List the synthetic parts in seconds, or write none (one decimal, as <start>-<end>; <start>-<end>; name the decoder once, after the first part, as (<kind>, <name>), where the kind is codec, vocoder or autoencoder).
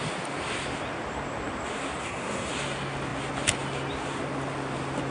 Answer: 2.0-2.5 (codec, SNAC)